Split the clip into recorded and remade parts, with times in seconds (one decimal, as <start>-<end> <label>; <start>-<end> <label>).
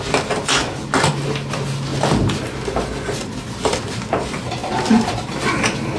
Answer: 0.0-6.0 recorded